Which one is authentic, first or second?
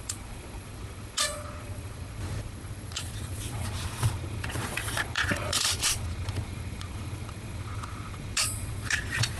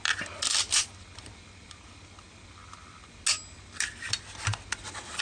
second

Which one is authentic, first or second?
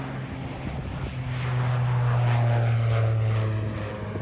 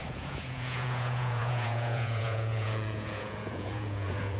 first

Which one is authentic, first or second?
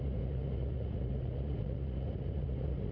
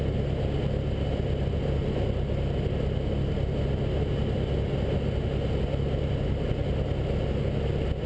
second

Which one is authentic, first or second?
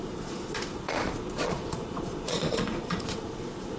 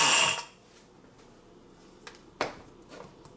second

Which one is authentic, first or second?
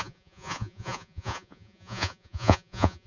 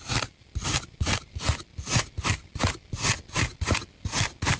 second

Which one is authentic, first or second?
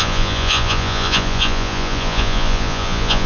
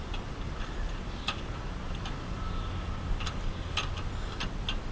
second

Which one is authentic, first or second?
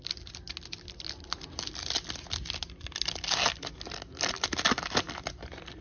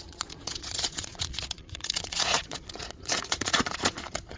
first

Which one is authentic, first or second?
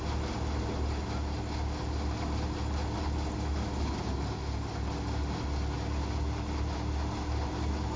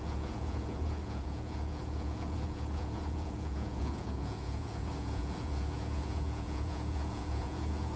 first